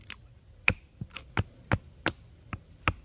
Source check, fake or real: real